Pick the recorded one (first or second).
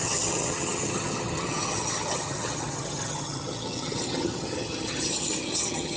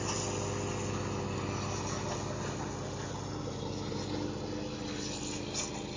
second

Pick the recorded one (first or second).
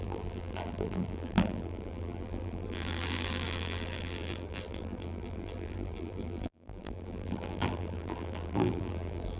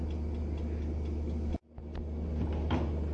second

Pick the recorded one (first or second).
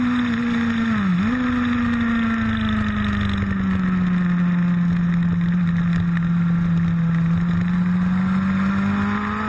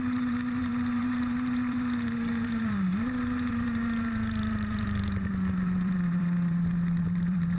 first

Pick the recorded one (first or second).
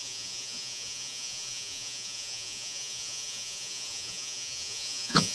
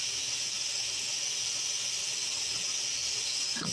second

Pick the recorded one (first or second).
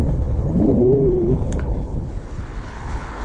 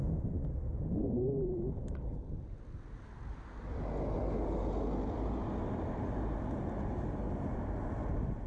second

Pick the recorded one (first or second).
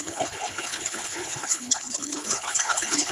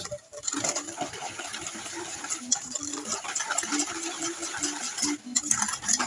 second